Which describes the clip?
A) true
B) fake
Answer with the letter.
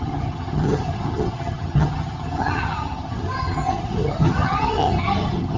B